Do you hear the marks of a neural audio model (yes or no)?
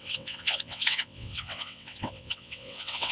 yes